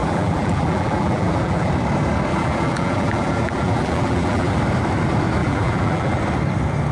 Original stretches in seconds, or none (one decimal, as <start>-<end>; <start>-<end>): 1.7-2.3; 4.6-5.4; 6.2-6.9